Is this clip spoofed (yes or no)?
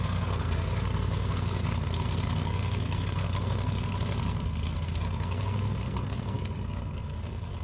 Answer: yes